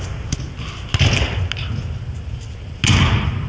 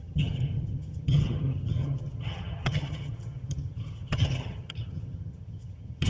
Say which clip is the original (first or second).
first